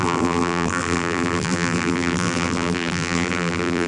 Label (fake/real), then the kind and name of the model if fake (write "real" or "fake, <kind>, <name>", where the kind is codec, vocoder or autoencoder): fake, vocoder, BigVGAN v2